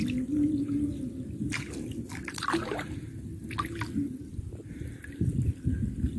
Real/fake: real